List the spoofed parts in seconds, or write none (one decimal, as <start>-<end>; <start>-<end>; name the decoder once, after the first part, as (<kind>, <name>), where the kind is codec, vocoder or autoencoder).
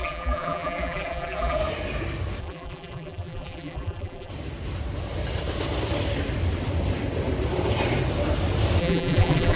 0.0-1.6 (vocoder, BigVGAN v2); 2.4-4.3; 8.8-9.6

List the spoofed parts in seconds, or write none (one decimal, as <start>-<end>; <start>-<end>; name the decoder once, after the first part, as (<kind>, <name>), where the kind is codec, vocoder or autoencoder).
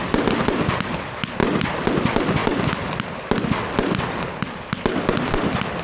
none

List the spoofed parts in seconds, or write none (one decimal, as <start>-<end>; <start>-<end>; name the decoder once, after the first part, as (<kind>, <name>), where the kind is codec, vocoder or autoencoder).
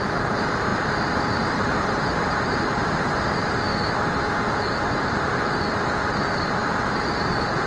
0.0-3.7 (vocoder, BigVGAN v2); 5.0-7.7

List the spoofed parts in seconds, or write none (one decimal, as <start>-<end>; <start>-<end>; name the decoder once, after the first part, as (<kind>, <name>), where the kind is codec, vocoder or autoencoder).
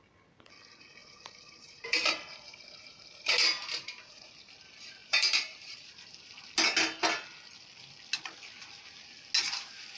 1.0-4.3 (vocoder, BigVGAN v2); 5.0-6.3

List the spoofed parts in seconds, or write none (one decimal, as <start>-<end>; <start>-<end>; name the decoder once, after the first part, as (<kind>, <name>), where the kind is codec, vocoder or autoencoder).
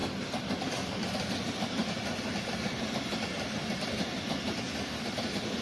0.7-5.6 (vocoder, BigVGAN v2)